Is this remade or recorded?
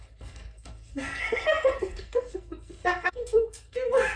remade